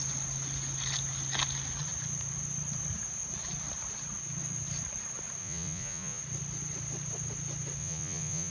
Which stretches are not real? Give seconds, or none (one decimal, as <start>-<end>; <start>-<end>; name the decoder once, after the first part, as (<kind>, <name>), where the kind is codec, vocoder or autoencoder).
5.4-6.2 (vocoder, Vocos); 7.8-8.5